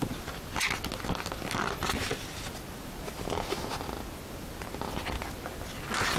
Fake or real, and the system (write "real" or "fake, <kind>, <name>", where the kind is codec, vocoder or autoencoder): real